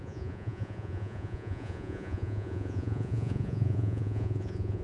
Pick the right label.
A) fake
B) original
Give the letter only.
A